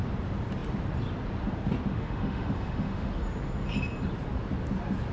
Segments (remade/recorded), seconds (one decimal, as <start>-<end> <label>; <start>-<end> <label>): 0.0-1.9 recorded; 1.9-3.1 remade; 3.1-5.1 recorded